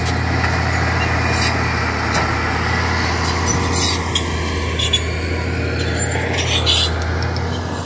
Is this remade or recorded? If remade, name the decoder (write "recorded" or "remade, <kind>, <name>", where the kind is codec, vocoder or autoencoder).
recorded